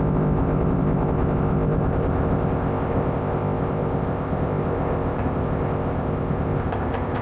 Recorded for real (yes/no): no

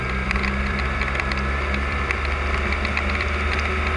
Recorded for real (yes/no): no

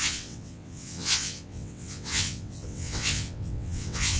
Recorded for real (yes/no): no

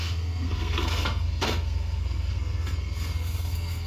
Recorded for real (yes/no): no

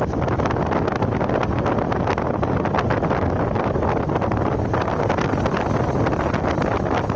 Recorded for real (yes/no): yes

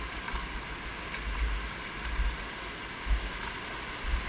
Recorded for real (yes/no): yes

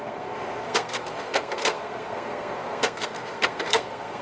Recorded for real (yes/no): no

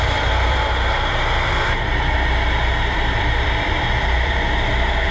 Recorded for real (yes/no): no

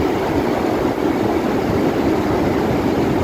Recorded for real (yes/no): yes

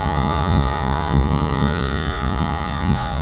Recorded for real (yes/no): no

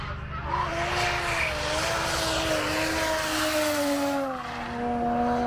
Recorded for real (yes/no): yes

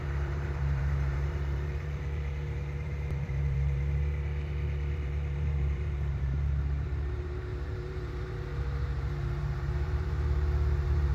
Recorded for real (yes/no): no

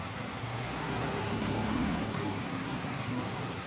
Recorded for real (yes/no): no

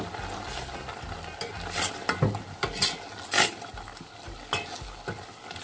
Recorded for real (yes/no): yes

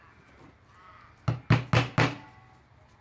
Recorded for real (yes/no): yes